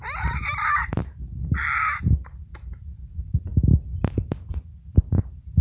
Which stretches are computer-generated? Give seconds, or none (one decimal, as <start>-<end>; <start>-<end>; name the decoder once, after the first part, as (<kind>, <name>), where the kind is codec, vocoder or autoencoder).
0.0-1.0 (vocoder, BigVGAN v2); 2.0-3.5; 5.0-5.6